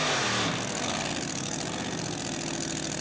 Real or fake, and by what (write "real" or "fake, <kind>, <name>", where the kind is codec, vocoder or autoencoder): real